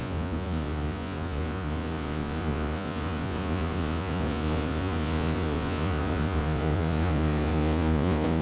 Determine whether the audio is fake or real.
fake